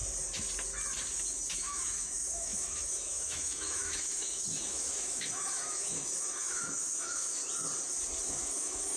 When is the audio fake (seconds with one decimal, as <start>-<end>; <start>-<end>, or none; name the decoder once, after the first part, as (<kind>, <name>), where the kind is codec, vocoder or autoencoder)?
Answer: 1.3-7.4 (autoencoder, DAC-VAE); 8.3-9.0